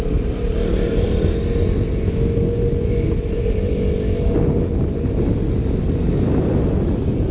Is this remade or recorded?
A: recorded